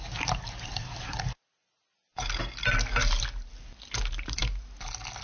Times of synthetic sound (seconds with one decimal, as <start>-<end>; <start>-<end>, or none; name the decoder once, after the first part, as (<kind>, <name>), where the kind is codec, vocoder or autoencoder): none